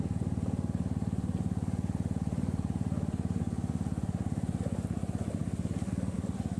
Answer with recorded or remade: recorded